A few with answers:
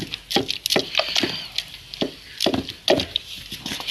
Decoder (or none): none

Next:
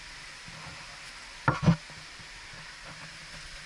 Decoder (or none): none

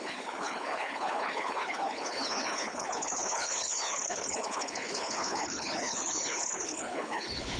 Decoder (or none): codec, HILCodec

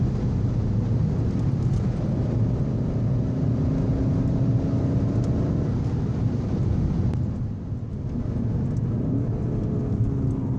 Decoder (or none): none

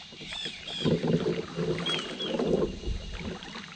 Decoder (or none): none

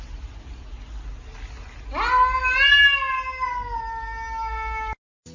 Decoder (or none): none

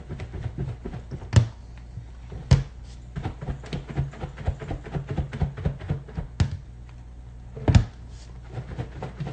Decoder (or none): none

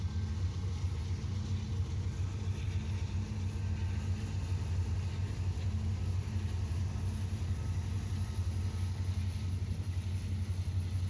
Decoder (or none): none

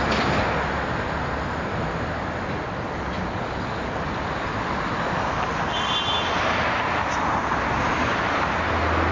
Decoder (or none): none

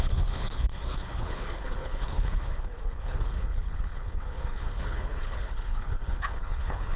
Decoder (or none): codec, HILCodec